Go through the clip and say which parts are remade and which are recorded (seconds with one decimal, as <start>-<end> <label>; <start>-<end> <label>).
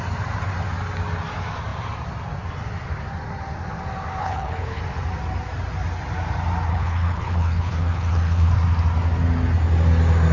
0.0-4.2 recorded; 4.2-4.8 remade; 4.8-6.7 recorded; 6.7-8.5 remade; 8.5-10.3 recorded